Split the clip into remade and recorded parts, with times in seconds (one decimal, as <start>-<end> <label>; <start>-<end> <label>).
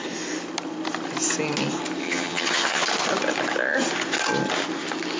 0.0-2.0 recorded; 2.0-2.8 remade; 2.8-5.2 recorded